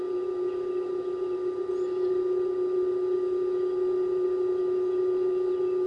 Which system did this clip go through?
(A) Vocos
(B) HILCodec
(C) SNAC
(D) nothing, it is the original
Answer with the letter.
D